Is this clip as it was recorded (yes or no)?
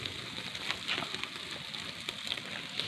yes